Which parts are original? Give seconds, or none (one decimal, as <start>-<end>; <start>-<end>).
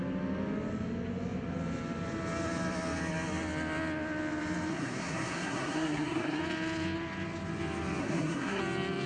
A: 0.0-4.7; 6.4-8.0; 8.6-9.1